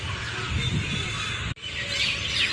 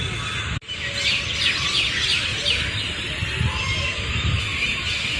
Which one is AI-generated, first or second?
first